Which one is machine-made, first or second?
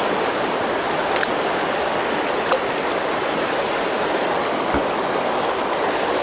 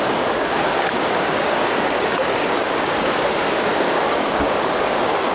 second